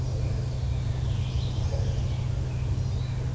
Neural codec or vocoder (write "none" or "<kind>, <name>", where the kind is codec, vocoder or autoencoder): none